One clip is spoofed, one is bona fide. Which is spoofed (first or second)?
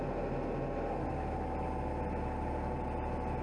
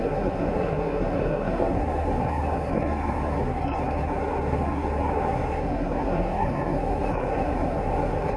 second